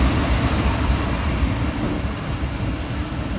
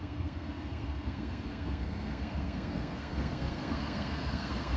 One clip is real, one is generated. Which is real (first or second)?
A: first